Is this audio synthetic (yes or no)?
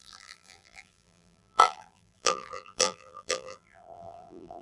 yes